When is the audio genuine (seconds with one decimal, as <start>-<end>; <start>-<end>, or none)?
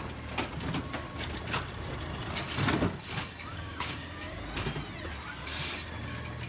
0.0-3.5; 4.4-6.5